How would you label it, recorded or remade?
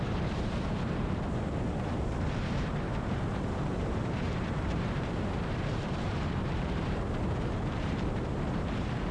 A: remade